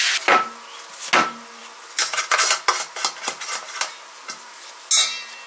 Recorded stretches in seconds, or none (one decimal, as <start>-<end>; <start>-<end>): 0.0-5.5